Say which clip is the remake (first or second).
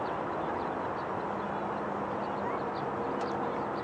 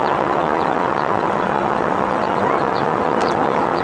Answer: second